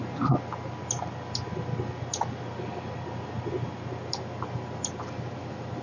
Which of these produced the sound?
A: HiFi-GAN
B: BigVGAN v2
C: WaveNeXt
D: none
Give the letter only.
D